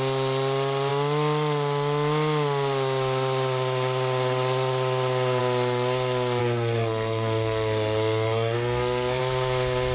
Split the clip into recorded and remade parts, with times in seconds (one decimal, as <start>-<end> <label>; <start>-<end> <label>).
0.0-6.4 recorded; 6.4-9.2 remade; 9.2-9.9 recorded